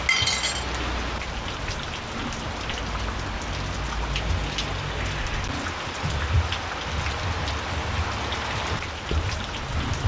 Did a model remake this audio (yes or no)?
no